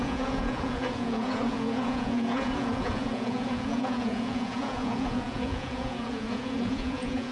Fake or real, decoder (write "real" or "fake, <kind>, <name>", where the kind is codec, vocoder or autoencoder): fake, vocoder, Vocos